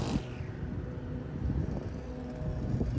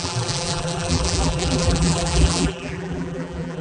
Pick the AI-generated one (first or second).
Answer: second